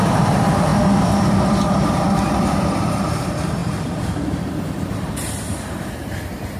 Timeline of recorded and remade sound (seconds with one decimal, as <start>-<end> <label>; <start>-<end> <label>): 0.0-0.7 remade; 0.7-1.2 recorded; 1.2-6.6 remade